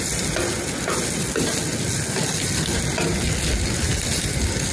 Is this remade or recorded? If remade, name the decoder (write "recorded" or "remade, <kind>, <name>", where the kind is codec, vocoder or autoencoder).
recorded